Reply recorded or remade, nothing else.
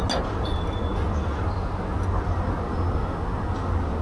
recorded